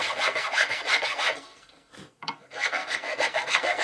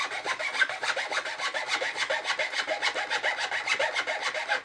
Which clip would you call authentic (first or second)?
second